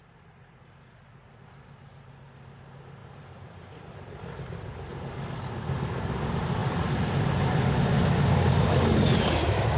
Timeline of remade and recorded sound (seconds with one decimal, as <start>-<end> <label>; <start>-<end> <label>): 0.0-3.0 recorded; 3.0-5.5 remade; 5.5-6.6 recorded; 6.6-7.7 remade; 7.7-9.8 recorded